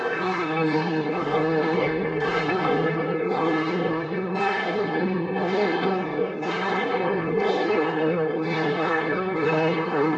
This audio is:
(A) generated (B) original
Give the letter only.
A